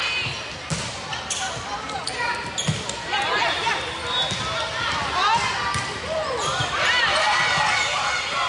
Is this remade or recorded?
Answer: recorded